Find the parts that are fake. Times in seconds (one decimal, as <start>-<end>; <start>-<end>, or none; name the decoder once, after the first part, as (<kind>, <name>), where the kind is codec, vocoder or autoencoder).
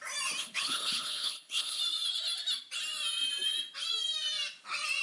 0.4-1.8 (codec, HILCodec)